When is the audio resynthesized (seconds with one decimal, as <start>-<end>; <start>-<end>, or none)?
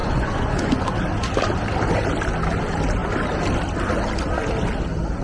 0.0-0.8